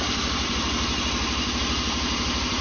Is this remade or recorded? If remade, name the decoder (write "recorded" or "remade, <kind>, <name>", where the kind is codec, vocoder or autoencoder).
remade, vocoder, BigVGAN v2